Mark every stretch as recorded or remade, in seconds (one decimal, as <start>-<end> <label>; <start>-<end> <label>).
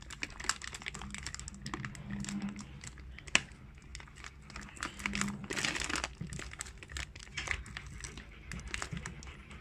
0.0-9.6 recorded